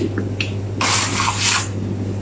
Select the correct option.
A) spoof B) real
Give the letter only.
B